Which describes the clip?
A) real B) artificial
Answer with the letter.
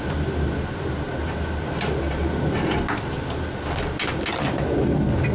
A